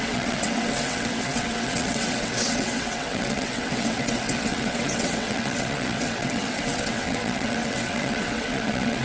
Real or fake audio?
fake